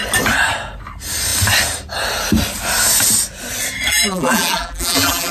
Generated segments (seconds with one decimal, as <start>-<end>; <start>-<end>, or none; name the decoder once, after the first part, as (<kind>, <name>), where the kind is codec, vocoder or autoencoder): 3.9-5.3 (vocoder, BigVGAN v2)

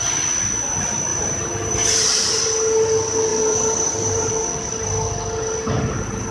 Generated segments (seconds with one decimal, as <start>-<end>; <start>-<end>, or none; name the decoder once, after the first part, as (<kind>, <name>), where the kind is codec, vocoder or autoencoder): 1.1-2.3 (vocoder, BigVGAN v2); 3.3-4.3

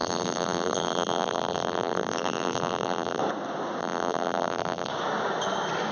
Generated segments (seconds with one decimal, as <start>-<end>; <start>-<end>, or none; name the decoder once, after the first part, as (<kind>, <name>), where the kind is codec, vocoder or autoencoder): 0.0-3.2 (vocoder, BigVGAN v2); 3.8-4.9

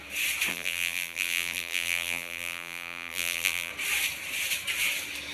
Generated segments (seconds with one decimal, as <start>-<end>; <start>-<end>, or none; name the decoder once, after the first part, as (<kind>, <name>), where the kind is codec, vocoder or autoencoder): 0.5-3.7 (vocoder, BigVGAN v2)

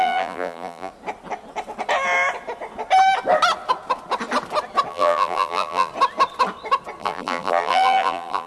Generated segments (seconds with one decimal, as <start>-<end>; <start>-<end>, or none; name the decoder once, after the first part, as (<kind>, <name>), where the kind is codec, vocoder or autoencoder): 0.0-0.9 (vocoder, BigVGAN v2); 4.9-5.9; 7.0-8.5

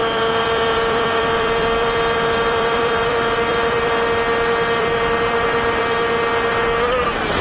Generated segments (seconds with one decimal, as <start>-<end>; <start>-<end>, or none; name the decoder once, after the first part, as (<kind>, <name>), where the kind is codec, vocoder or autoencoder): 0.0-3.9 (vocoder, BigVGAN v2); 4.8-5.8